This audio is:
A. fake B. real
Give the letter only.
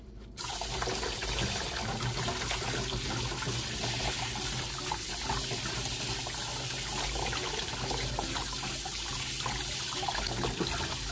B